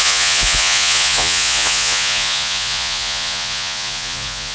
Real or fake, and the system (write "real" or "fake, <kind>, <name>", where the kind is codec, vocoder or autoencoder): fake, vocoder, Vocos